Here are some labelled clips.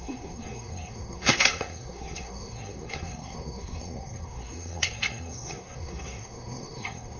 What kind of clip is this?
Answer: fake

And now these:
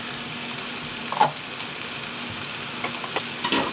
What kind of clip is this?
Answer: real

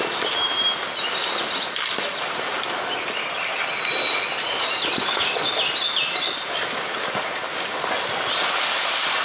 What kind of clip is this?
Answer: real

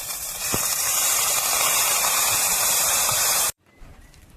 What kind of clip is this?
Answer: fake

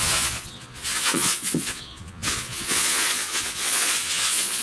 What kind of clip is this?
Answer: fake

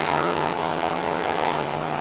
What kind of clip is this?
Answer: fake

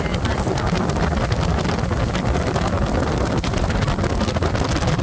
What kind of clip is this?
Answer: real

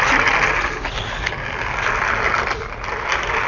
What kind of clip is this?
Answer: real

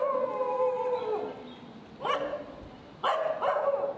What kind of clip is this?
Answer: real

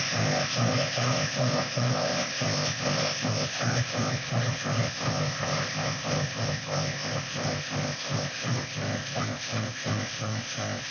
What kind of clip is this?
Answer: fake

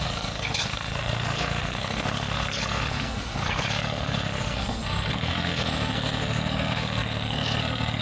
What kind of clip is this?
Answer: fake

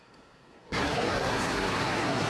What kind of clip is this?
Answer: fake